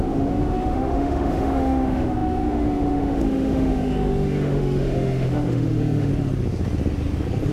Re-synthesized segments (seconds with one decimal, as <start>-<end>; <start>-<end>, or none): 0.0-6.1